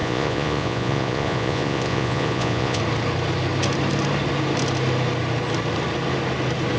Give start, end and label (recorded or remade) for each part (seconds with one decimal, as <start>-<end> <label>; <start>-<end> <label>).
0.0-2.8 remade; 2.8-6.8 recorded